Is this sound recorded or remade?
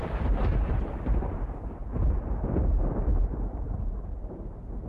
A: remade